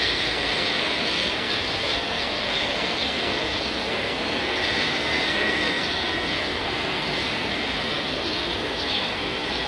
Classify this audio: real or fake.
fake